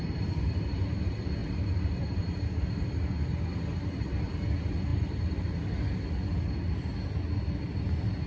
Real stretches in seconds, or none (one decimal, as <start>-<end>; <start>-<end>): 0.0-8.3

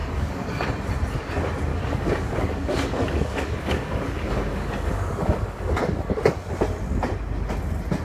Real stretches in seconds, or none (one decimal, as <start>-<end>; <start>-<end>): 0.7-1.7; 6.5-8.0

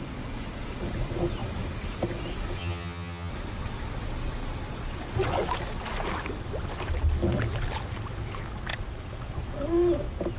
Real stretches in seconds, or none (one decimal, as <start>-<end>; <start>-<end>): 0.0-2.6; 3.3-10.4

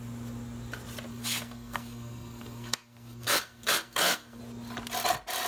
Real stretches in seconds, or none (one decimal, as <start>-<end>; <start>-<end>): 0.0-1.1; 4.4-5.5

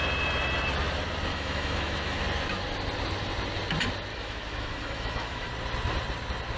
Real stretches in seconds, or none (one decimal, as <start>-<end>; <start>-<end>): 0.0-1.3; 2.2-4.1; 5.5-6.6